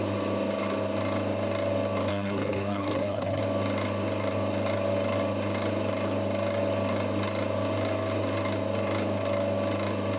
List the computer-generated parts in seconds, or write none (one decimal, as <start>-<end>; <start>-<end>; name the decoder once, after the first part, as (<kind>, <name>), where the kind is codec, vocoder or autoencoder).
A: 2.1-3.4 (codec, SNAC)